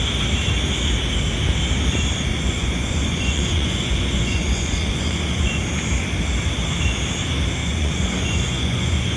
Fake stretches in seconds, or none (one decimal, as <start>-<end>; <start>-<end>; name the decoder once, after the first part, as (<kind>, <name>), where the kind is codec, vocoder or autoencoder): 2.3-5.6 (vocoder, Vocos); 7.6-9.2